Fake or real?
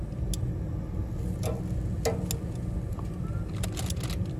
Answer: real